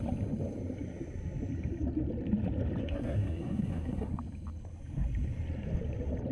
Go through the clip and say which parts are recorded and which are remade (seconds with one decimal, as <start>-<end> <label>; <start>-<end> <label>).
0.0-2.8 recorded; 2.8-4.1 remade; 4.1-6.3 recorded